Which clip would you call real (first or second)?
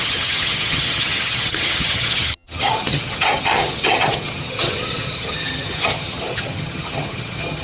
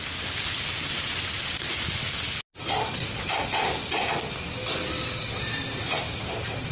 second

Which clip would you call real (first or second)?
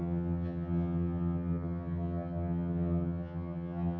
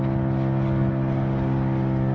second